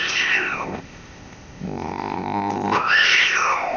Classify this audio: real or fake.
fake